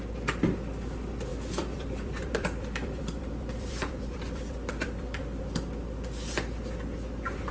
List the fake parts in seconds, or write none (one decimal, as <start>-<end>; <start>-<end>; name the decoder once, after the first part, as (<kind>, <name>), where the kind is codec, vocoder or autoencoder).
1.3-5.4 (vocoder, BigVGAN v2)